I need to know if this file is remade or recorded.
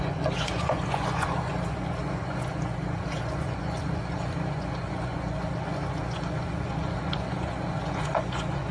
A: remade